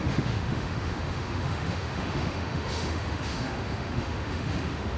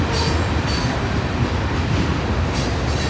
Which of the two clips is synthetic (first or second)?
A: first